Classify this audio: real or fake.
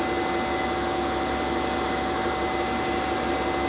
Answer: real